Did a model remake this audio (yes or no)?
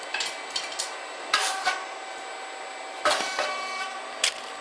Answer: no